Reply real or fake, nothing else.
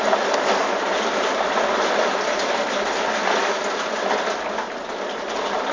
real